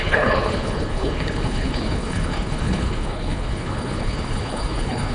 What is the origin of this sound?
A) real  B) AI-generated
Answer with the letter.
B